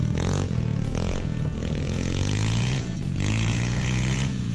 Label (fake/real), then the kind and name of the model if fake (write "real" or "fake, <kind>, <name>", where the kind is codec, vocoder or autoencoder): fake, vocoder, Vocos